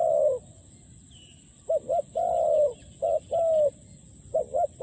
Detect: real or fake real